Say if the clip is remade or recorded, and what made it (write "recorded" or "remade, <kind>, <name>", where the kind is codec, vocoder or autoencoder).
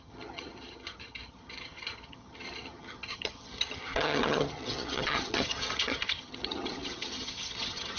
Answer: remade, vocoder, HiFi-GAN